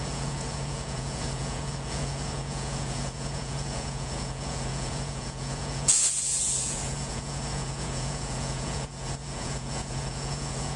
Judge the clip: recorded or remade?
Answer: remade